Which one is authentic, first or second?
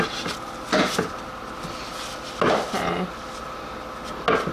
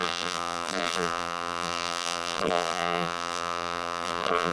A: first